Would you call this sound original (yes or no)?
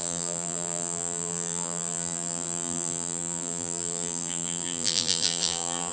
no